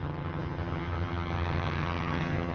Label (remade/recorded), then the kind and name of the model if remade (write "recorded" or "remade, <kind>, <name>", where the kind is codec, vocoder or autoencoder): remade, vocoder, HiFi-GAN